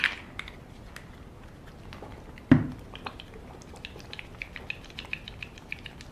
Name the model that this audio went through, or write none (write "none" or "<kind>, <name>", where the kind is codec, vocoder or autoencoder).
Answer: none